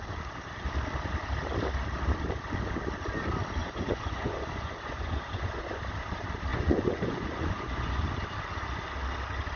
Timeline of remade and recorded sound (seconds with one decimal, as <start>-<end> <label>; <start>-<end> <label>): 0.0-3.6 recorded; 3.6-5.8 remade; 5.8-6.5 recorded; 6.5-8.1 remade; 8.1-9.6 recorded